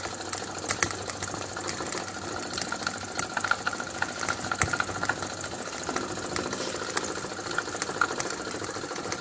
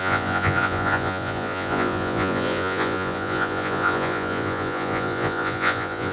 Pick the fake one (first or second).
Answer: second